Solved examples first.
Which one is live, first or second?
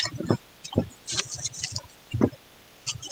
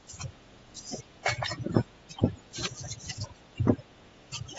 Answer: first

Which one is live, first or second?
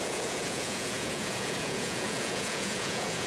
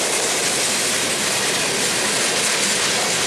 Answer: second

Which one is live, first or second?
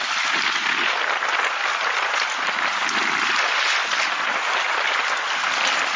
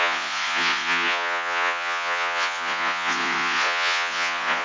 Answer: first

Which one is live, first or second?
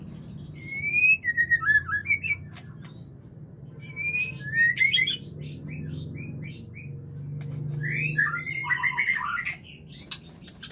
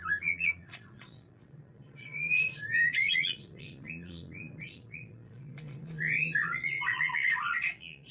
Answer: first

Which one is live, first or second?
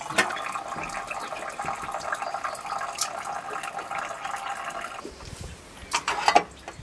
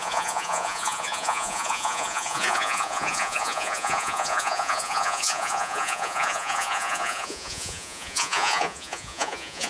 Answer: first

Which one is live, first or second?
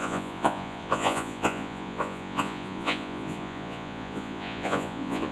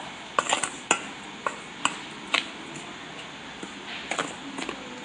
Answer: second